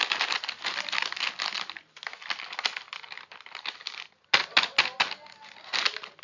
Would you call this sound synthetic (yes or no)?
no